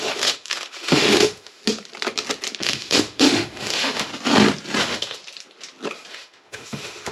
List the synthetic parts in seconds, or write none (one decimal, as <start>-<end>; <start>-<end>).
0.0-1.6; 2.6-4.1; 4.8-5.2; 6.1-7.1